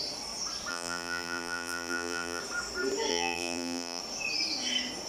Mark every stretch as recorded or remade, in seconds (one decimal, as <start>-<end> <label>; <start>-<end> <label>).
0.0-0.7 recorded; 0.7-2.4 remade; 2.4-3.1 recorded; 3.1-4.0 remade; 4.0-5.1 recorded